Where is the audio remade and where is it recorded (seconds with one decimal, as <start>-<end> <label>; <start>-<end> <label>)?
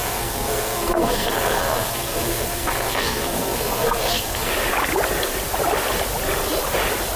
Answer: 0.0-4.5 remade; 4.5-7.2 recorded